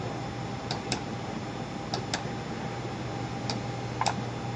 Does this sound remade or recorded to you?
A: recorded